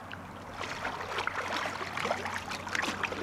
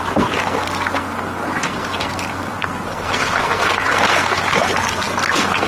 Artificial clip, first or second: second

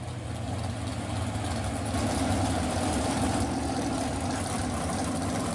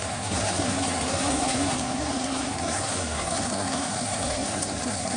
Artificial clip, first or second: second